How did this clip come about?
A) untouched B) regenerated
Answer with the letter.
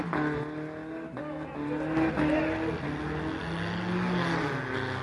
A